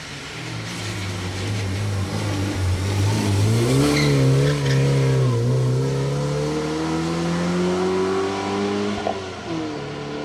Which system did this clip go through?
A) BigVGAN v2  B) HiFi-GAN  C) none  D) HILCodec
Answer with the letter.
C